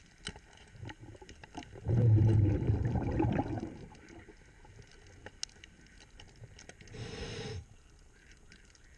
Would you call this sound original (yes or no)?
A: yes